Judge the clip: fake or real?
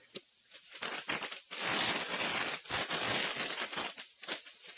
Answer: real